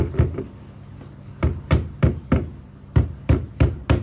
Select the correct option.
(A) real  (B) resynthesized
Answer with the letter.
A